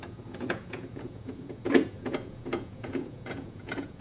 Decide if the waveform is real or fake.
fake